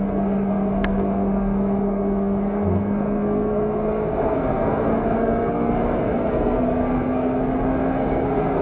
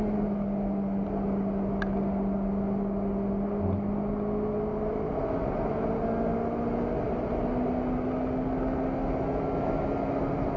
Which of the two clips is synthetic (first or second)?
first